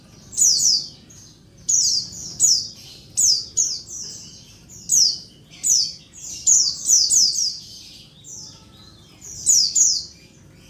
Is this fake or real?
real